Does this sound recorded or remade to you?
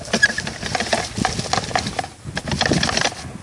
recorded